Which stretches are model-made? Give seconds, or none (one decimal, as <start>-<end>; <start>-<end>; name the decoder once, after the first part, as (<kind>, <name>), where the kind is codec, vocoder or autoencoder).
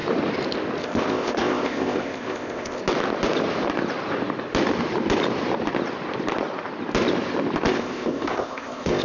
0.8-2.8 (codec, ZipCodec); 7.7-9.0